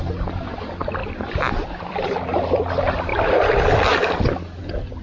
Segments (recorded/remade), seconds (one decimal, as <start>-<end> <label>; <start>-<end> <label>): 0.0-1.0 recorded; 1.0-2.7 remade; 2.7-5.0 recorded